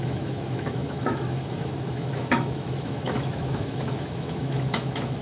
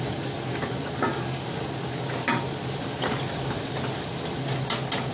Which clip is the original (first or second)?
second